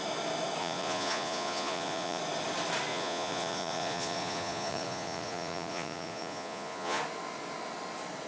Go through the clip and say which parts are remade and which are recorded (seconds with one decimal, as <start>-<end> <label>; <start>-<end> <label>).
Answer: 0.0-0.6 recorded; 0.6-2.2 remade; 2.2-2.9 recorded; 2.9-7.0 remade; 7.0-8.3 recorded